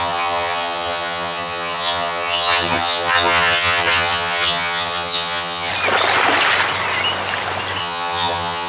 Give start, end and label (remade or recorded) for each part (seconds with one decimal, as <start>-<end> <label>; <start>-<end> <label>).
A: 0.0-5.7 remade; 5.7-7.8 recorded; 7.8-8.7 remade